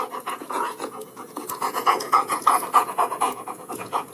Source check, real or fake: fake